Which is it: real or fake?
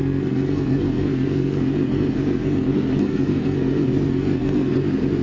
fake